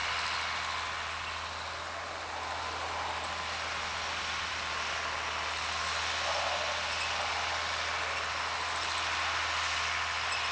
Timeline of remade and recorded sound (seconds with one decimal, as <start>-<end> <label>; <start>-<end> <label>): 0.0-10.5 recorded